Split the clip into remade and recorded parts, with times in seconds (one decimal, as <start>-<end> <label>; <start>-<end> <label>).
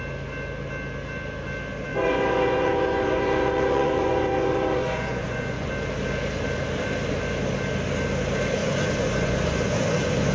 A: 0.0-1.9 recorded; 1.9-5.7 remade; 5.7-8.6 recorded; 8.6-10.3 remade